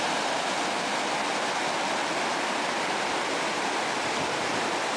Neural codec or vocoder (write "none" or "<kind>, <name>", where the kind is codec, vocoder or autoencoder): none